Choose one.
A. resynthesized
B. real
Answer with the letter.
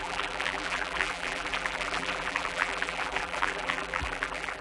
A